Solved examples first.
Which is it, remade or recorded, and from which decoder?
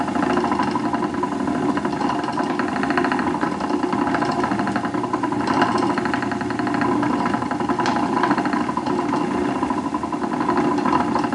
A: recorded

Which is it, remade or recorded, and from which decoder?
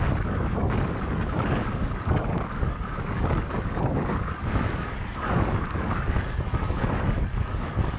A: remade, codec, DAC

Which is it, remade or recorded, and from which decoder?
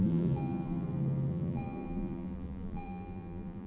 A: remade, vocoder, BigVGAN v2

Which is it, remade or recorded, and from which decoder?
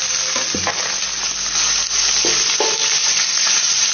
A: recorded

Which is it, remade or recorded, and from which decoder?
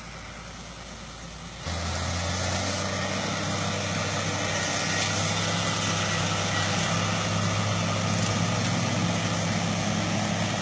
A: recorded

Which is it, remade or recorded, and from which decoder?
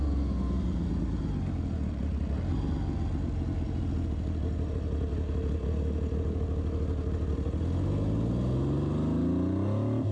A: recorded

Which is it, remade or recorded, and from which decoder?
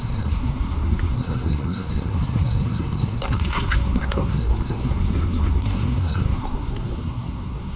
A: remade, codec, SNAC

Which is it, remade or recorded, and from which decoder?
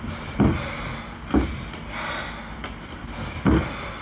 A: recorded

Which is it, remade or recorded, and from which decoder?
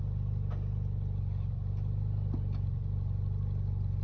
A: recorded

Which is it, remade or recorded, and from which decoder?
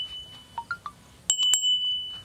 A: recorded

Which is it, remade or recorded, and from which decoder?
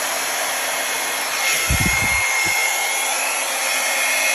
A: recorded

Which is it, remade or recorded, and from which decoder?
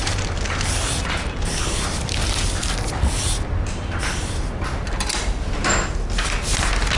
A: recorded